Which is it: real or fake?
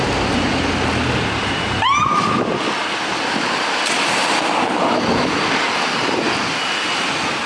real